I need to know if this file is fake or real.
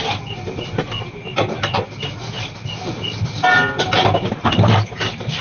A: real